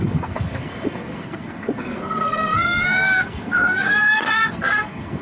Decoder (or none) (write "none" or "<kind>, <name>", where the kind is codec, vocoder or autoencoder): codec, SNAC